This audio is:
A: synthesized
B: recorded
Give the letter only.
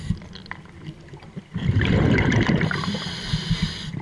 B